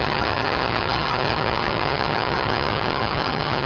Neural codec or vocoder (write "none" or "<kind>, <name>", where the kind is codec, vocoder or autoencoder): vocoder, HiFi-GAN